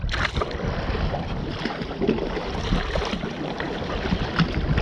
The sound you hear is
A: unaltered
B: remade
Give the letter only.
A